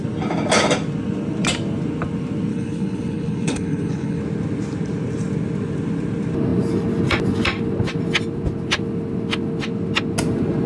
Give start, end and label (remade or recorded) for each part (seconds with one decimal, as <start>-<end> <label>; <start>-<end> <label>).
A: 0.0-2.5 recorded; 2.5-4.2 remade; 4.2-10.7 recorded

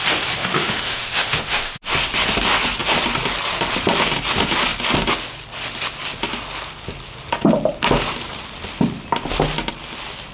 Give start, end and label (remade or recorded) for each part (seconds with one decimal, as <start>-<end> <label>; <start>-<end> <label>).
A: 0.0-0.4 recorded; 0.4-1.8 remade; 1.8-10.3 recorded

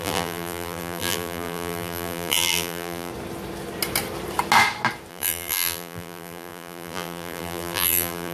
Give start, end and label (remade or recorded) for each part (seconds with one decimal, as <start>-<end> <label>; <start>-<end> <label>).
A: 0.0-3.1 remade; 3.1-5.1 recorded; 5.1-8.3 remade